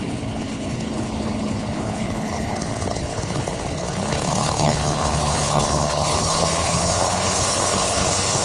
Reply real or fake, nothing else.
fake